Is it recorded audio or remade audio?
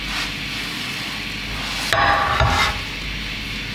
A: recorded